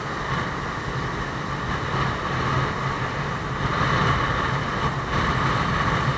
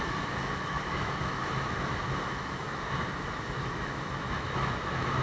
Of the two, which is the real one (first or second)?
first